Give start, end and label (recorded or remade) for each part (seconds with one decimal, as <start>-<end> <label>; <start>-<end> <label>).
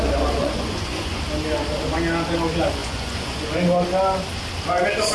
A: 0.0-0.4 recorded; 0.4-1.2 remade; 1.2-2.8 recorded; 2.8-3.5 remade; 3.5-5.1 recorded